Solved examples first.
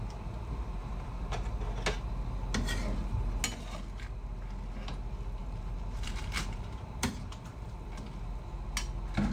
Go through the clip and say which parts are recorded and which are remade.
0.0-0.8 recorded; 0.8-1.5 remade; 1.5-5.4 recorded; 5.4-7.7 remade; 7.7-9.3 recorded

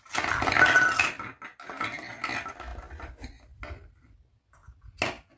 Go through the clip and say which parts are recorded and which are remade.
0.0-5.4 recorded

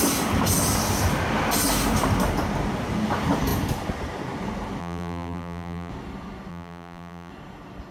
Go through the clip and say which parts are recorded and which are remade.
0.0-4.8 recorded; 4.8-5.9 remade; 5.9-6.5 recorded; 6.5-7.3 remade; 7.3-7.9 recorded

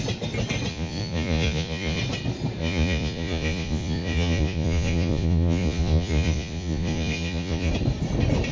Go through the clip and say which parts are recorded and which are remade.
0.0-0.7 recorded; 0.7-2.0 remade; 2.0-2.6 recorded; 2.6-7.7 remade; 7.7-8.5 recorded

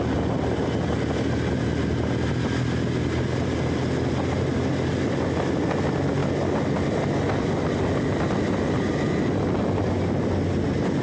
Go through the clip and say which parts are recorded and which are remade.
0.0-11.0 recorded

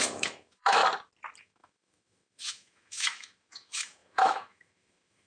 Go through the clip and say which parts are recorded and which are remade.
0.0-0.8 remade; 0.8-1.4 recorded; 1.4-5.3 remade